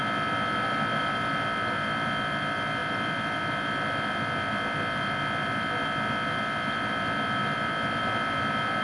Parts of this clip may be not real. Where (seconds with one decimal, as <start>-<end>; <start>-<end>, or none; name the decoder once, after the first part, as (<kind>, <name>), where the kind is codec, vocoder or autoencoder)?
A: none